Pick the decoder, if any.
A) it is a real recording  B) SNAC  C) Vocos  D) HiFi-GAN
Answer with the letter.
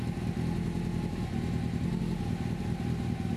A